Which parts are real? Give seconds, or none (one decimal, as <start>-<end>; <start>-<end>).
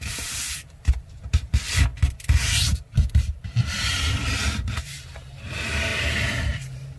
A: 5.9-6.4